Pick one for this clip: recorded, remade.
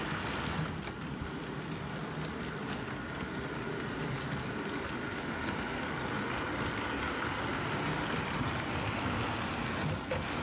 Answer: recorded